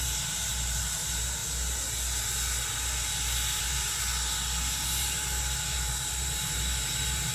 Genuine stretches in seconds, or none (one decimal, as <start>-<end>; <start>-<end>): 1.4-3.6; 4.1-4.7